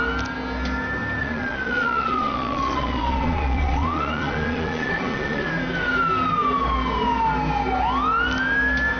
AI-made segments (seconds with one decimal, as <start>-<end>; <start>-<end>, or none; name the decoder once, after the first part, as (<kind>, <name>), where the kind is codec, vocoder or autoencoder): 1.2-5.5 (vocoder, Vocos)